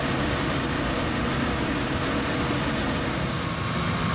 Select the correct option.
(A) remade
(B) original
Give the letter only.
B